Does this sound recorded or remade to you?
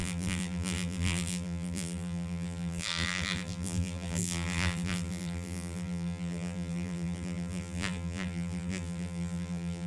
remade